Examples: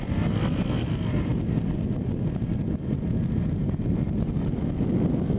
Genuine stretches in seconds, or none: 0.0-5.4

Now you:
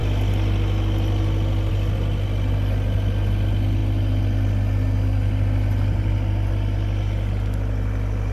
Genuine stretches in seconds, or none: 0.0-8.3

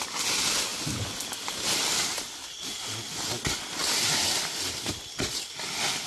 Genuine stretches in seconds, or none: 0.0-6.1

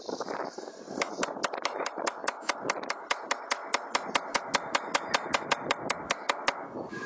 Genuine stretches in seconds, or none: 0.0-7.1

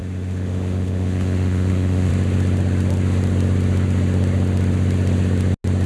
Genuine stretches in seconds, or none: 2.1-5.9